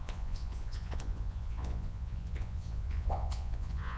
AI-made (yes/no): yes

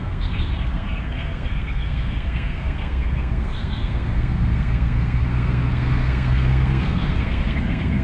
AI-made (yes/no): yes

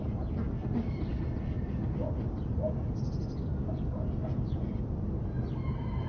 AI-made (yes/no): no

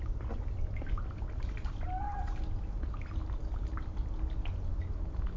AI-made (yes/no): no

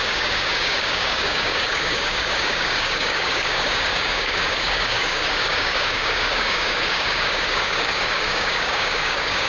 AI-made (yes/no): yes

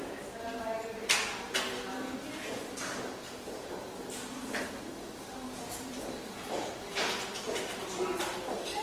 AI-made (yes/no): no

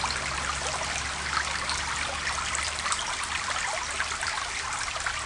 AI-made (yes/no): no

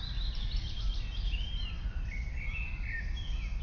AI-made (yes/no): no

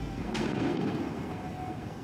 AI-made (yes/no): yes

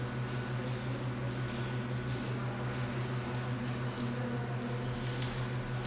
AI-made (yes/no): no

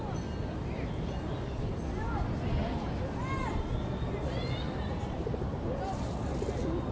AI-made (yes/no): no